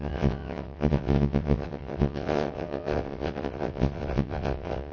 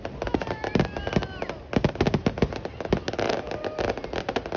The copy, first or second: first